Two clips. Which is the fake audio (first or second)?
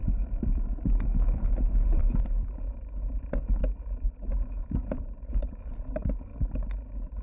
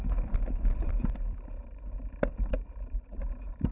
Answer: second